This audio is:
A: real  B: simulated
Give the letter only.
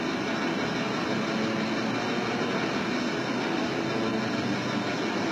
A